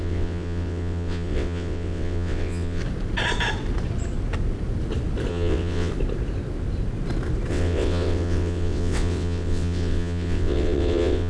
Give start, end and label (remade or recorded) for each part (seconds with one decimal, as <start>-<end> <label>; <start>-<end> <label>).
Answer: 0.0-2.8 remade; 2.8-5.3 recorded; 5.3-5.9 remade; 5.9-7.5 recorded; 7.5-11.3 remade